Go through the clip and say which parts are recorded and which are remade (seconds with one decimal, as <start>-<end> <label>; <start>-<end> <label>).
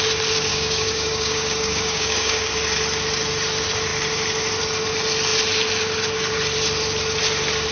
0.0-0.5 recorded; 0.5-2.5 remade; 2.5-7.7 recorded